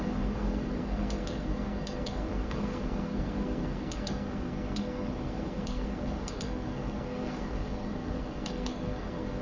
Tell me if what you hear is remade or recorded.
remade